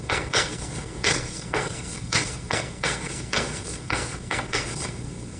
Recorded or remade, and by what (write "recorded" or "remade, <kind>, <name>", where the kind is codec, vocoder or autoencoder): remade, codec, SNAC